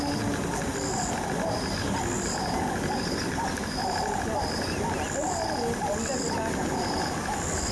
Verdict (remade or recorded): recorded